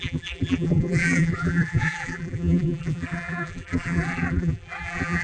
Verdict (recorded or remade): remade